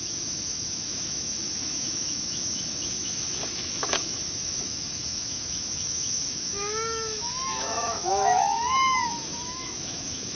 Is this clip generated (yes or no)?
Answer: yes